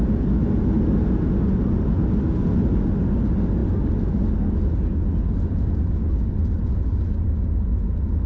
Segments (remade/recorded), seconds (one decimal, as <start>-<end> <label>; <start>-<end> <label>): 0.0-8.3 recorded